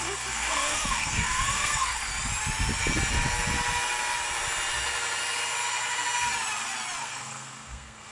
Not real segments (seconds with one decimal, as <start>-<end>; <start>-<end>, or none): 0.0-2.1; 7.0-8.1